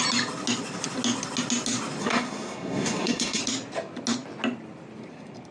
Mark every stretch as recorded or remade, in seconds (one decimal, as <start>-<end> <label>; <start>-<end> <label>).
0.0-2.0 recorded; 2.0-3.4 remade; 3.4-5.5 recorded